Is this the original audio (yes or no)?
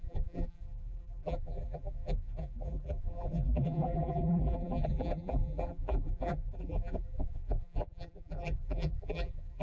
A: no